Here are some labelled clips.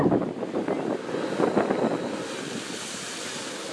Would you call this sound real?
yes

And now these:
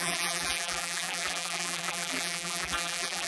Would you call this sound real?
no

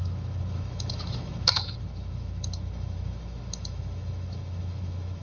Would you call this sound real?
no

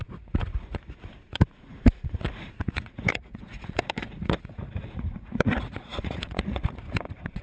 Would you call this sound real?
no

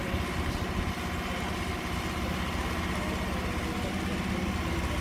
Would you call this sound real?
yes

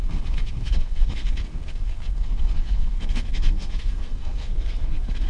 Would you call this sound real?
no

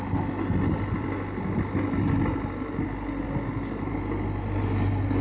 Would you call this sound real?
yes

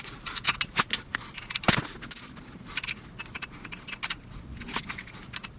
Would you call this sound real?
yes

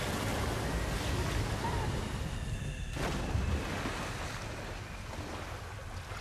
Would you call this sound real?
yes